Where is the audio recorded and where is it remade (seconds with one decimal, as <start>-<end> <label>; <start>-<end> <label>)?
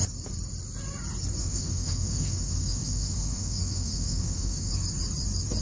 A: 0.0-1.4 recorded; 1.4-4.7 remade; 4.7-5.6 recorded